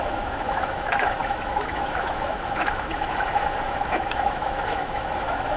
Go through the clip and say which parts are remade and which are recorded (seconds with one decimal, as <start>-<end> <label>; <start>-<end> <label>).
0.0-5.6 remade